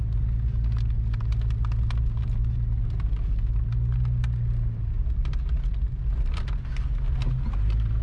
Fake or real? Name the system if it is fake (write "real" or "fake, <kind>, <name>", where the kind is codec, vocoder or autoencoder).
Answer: real